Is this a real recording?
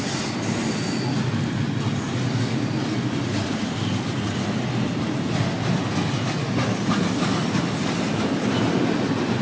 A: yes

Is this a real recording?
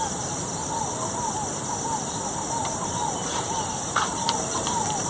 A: no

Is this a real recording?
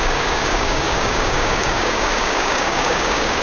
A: no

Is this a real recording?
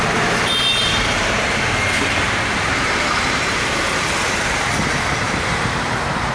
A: no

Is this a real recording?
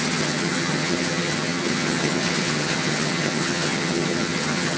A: no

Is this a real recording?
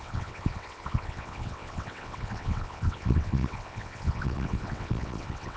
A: no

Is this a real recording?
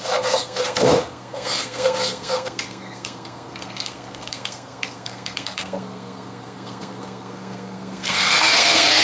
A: no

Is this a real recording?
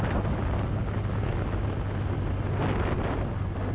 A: yes